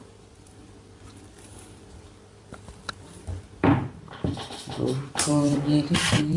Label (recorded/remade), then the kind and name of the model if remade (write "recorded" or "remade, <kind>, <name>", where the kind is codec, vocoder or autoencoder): remade, vocoder, BigVGAN v2